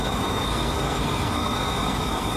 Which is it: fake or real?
fake